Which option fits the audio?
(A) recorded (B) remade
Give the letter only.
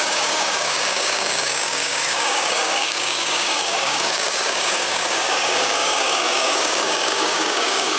B